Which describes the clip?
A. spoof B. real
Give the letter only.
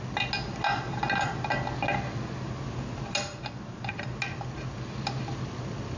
B